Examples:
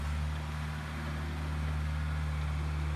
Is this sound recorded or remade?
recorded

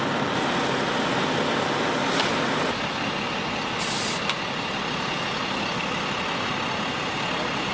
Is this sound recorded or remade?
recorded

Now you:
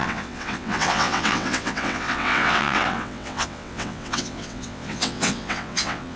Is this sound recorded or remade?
remade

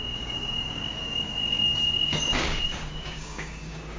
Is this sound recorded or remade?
remade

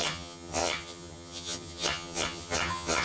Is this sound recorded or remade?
remade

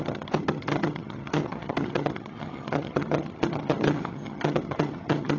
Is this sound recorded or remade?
remade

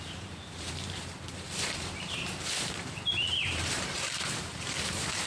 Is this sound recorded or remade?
remade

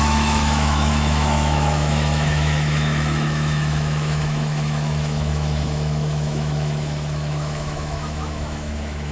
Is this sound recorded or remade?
remade